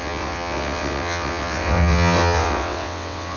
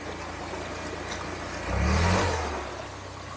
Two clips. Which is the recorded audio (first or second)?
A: second